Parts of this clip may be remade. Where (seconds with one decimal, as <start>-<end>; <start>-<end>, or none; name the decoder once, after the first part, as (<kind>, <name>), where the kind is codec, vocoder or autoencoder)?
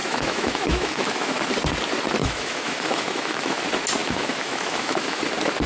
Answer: 0.0-1.4 (autoencoder, DAC-VAE); 2.2-3.6; 4.0-5.2